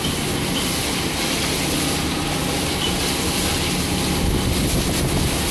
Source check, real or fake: real